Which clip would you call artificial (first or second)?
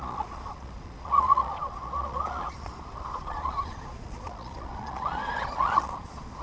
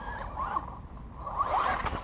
first